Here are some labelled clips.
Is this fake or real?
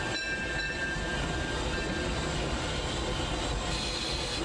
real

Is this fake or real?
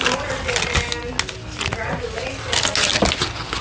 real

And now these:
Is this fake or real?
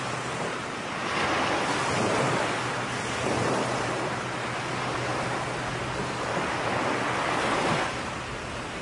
real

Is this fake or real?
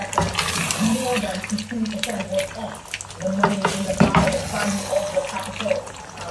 real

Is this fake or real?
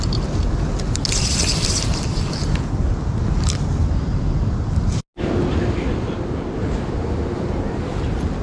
real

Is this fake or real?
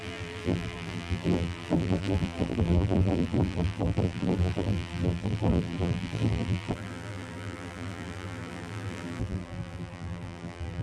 fake